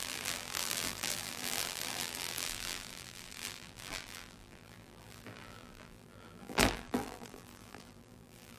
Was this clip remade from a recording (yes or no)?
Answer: yes